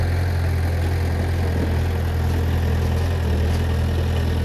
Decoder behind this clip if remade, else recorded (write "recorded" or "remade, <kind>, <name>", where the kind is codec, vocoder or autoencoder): recorded